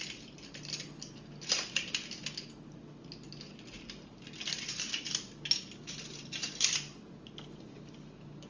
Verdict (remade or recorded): recorded